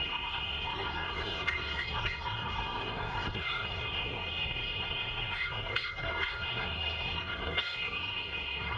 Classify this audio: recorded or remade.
remade